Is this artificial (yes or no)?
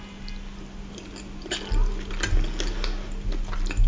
no